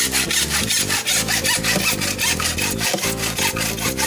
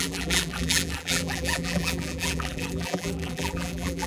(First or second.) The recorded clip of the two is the first